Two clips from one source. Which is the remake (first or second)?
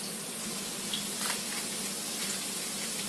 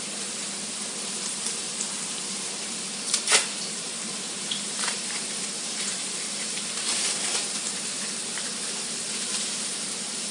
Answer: second